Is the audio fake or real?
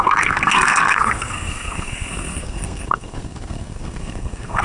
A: fake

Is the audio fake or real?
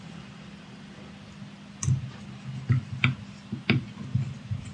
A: real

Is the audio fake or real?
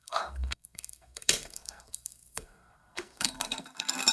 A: fake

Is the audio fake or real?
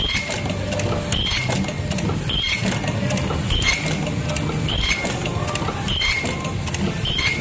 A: real